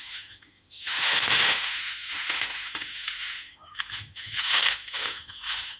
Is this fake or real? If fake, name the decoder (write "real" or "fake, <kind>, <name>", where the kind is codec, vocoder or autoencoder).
fake, autoencoder, DAC-VAE